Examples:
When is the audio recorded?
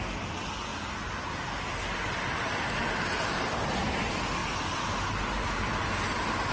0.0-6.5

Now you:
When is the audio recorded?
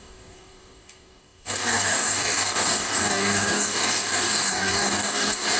none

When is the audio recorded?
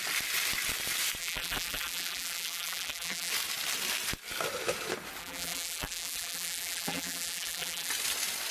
0.0-1.2; 3.3-5.2; 7.9-8.5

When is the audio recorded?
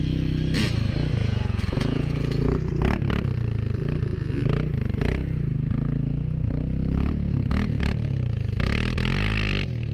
0.0-1.2; 2.4-9.9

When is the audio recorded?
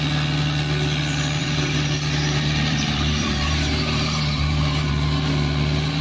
0.0-1.4; 4.9-6.0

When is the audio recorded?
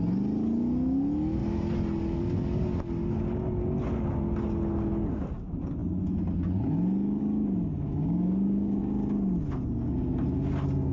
0.0-8.0; 8.8-10.9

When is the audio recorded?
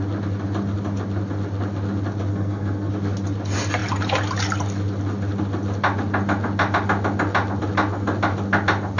0.0-2.3; 2.9-9.0